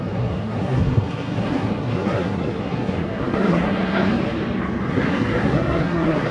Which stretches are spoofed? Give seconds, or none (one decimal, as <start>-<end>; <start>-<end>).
0.0-4.1; 4.9-6.3